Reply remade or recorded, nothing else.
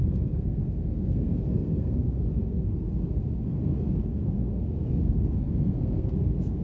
remade